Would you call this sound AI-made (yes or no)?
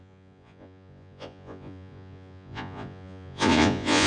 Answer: yes